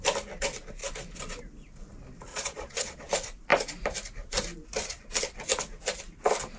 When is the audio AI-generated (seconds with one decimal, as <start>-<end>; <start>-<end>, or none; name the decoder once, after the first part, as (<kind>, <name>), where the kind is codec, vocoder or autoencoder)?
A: 2.3-3.1 (vocoder, Vocos)